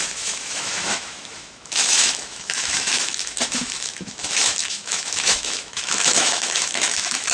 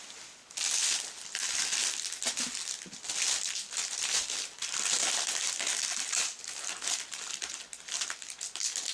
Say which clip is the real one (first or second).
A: second